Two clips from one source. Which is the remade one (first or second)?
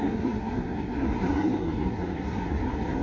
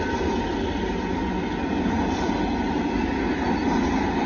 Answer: first